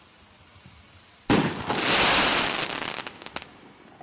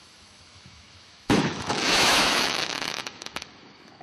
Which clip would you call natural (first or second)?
first